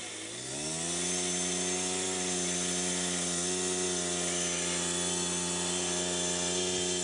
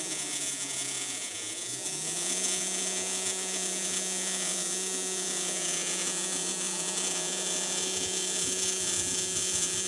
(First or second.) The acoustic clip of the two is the first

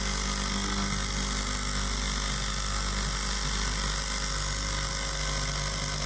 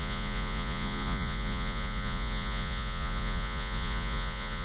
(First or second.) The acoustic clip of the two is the first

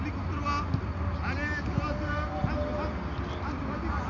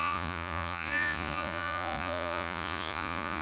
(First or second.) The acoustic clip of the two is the first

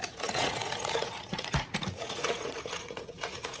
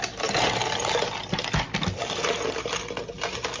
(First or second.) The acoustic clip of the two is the second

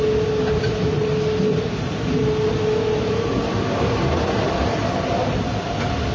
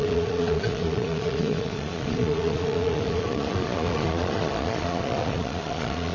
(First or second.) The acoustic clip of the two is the first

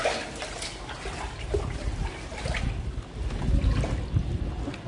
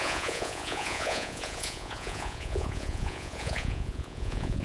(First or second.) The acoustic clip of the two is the first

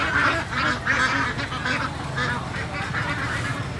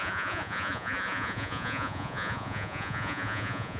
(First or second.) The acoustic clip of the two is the first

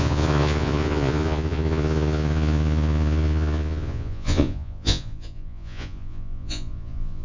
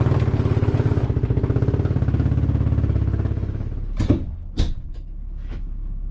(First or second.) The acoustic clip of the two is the second